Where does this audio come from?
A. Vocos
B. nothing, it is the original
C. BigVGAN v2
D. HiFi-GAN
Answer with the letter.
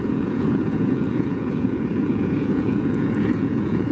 A